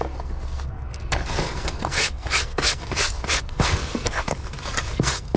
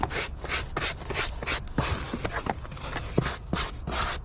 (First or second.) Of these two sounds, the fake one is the first